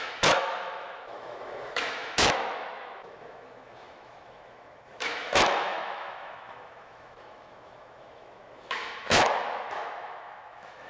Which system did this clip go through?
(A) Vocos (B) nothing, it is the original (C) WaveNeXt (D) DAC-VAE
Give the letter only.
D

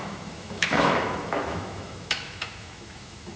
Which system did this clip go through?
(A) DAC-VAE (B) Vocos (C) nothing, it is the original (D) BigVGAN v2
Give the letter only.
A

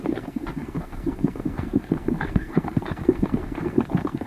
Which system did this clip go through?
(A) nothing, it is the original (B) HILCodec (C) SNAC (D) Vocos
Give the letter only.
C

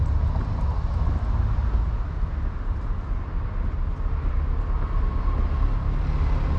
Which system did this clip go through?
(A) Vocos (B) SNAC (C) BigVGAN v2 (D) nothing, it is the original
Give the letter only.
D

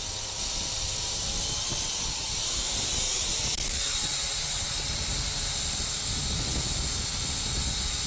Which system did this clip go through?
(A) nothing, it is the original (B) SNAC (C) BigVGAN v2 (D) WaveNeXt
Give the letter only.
C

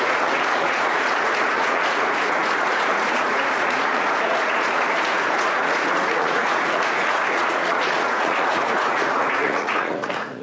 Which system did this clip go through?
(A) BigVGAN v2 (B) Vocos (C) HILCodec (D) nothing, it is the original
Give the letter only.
B